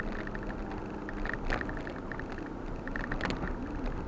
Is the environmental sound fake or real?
real